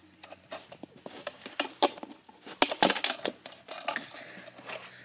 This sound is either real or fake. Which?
real